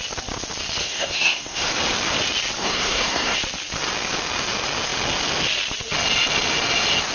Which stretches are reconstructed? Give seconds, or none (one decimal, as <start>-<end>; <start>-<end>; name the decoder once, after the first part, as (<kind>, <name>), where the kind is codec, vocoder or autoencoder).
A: 0.8-1.7 (codec, SNAC); 2.6-3.4